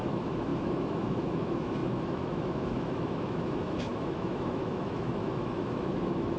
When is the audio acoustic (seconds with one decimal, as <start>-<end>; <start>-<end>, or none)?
none